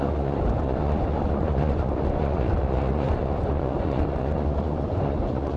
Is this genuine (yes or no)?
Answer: no